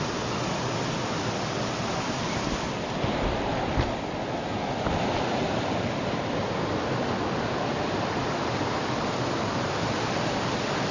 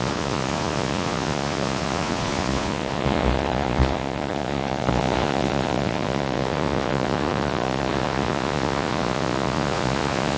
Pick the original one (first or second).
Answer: first